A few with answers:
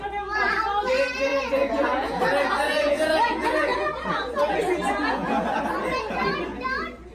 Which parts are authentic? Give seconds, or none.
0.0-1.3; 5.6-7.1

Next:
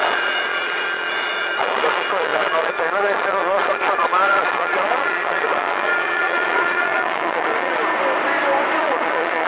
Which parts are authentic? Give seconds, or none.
7.8-8.8

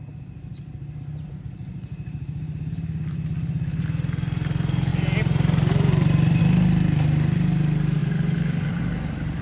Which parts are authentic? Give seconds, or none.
0.0-9.4

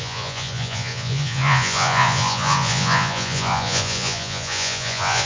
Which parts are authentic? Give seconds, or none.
none

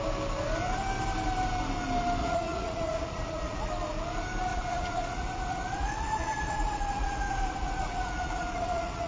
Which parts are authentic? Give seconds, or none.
0.0-2.2; 3.7-4.5